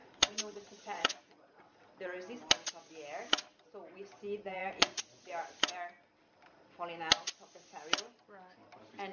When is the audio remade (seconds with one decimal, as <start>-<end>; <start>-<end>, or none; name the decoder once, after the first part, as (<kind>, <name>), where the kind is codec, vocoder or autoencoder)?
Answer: 0.0-1.9 (vocoder, Vocos); 4.5-5.0